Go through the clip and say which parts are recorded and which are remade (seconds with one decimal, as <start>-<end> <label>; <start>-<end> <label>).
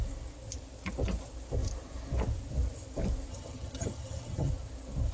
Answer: 0.0-3.3 recorded; 3.3-4.5 remade; 4.5-5.1 recorded